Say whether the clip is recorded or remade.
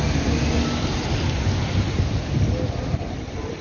recorded